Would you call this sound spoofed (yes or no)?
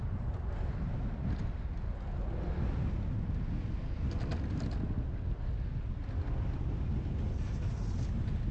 no